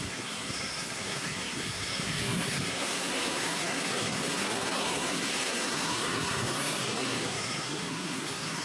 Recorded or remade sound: remade